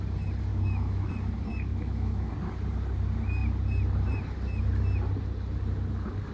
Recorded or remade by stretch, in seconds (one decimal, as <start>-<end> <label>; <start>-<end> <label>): 0.0-0.5 recorded; 0.5-1.1 remade; 1.1-1.7 recorded; 1.7-2.3 remade; 2.3-6.3 recorded